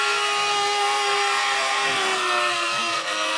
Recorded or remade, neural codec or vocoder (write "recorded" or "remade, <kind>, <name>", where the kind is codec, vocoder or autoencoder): remade, codec, SNAC